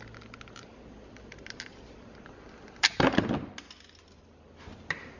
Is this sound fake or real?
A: real